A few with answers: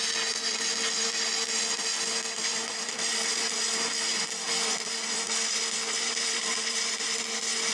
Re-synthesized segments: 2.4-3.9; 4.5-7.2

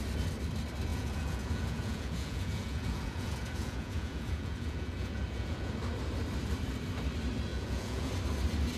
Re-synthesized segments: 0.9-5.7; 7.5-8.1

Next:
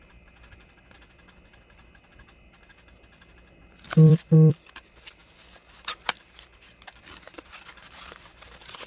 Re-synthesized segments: 0.0-8.9

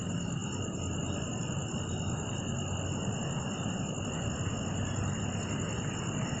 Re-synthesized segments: none

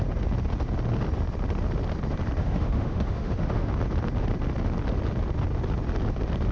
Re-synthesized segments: 2.4-3.7

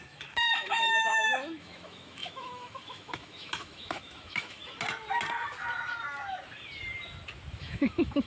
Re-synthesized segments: 0.0-4.6; 7.6-8.3